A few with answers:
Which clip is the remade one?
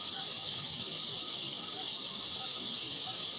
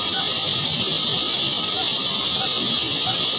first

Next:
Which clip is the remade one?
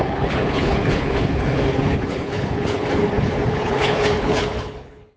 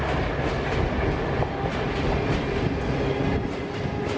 first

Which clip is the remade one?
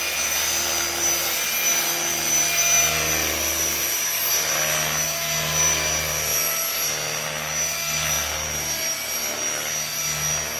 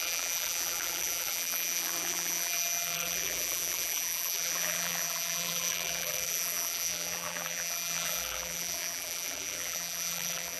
second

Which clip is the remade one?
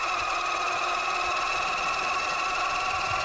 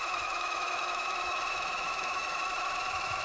second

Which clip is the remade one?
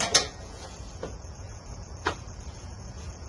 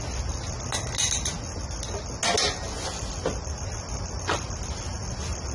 first